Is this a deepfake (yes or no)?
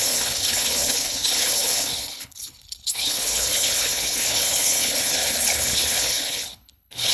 yes